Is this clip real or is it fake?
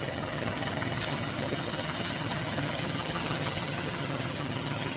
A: fake